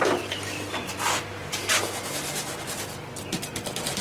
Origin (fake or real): real